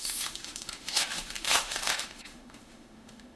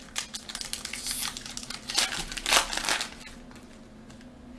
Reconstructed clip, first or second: first